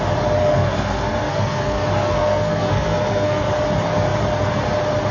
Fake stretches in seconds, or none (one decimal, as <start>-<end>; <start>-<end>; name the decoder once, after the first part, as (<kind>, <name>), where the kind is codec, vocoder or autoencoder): 0.4-3.5 (codec, SNAC)